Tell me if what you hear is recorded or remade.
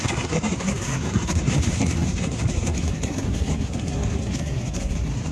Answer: remade